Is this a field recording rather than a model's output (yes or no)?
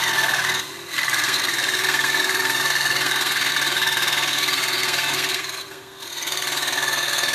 no